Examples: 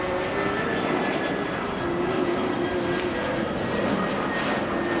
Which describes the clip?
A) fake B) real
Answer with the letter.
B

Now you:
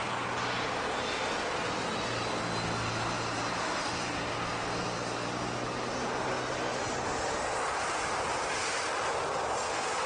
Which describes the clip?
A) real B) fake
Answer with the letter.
A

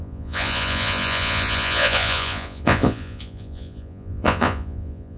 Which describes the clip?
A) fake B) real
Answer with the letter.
A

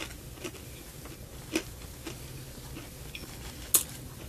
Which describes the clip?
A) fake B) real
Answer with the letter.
B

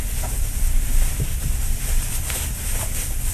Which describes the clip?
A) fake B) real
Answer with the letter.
B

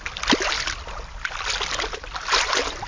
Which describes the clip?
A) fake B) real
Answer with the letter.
B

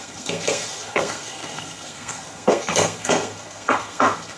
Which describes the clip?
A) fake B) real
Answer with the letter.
A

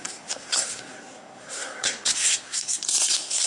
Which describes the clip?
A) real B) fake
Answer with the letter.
B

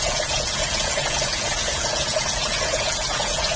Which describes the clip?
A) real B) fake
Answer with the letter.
B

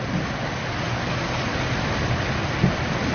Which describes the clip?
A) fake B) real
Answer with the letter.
B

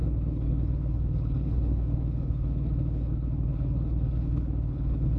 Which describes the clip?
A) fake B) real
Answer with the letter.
A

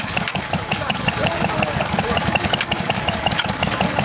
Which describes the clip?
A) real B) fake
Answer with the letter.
B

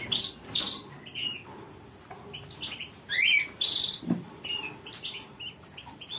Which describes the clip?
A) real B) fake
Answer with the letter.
A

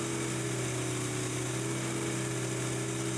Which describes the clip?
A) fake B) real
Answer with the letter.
B